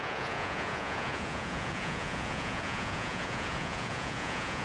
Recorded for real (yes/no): no